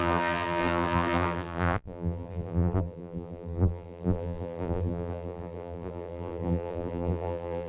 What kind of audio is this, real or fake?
fake